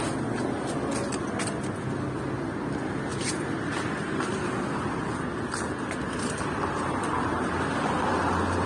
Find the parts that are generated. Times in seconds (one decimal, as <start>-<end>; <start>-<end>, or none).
none